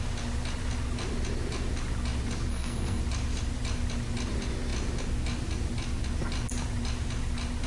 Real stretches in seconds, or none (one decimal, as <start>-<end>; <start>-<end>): 0.0-2.5; 3.0-7.7